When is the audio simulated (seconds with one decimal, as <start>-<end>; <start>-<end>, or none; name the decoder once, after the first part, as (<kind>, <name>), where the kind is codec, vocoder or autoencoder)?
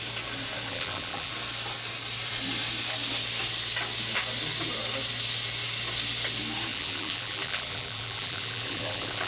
0.7-1.3 (vocoder, BigVGAN v2); 6.7-9.3